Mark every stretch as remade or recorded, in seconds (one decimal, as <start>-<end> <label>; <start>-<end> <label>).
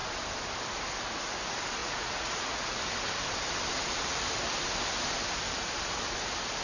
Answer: 0.0-1.8 recorded; 1.8-2.8 remade; 2.8-6.6 recorded